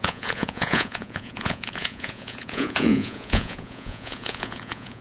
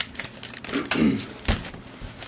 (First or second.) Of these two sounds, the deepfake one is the first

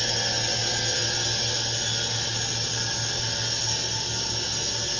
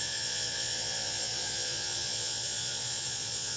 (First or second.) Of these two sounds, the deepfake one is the second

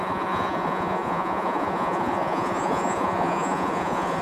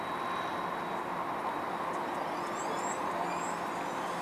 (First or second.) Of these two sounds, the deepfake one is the first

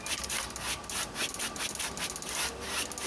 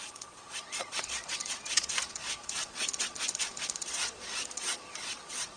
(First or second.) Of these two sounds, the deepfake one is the second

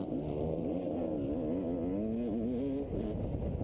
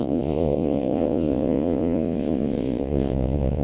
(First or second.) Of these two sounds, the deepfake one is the second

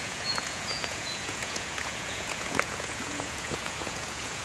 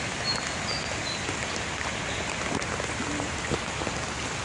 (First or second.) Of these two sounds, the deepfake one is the first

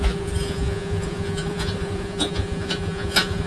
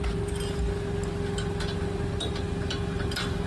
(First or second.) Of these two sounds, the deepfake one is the first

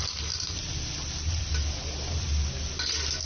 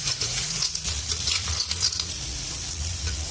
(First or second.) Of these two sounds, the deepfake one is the second